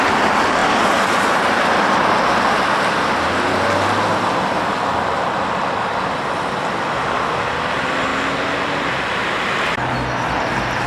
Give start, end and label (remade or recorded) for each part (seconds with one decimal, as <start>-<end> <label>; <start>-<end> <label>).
0.0-10.9 recorded